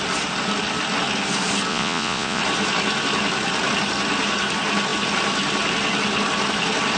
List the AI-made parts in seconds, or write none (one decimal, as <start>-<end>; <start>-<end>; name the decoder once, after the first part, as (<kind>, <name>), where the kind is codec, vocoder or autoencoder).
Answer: 1.7-2.4 (vocoder, Vocos)